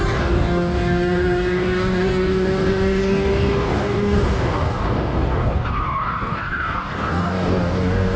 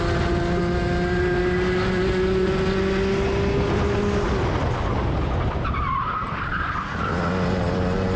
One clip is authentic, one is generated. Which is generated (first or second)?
first